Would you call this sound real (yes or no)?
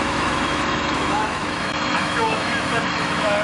no